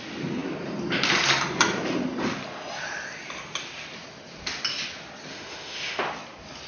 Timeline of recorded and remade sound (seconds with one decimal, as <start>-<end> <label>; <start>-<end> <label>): 0.0-5.3 recorded; 5.3-6.0 remade; 6.0-6.7 recorded